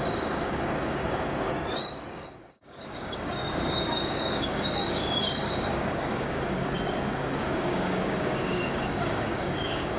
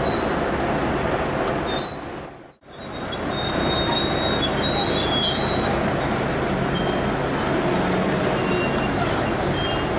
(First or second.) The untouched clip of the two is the second